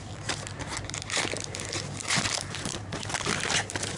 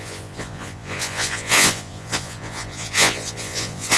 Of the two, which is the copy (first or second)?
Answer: second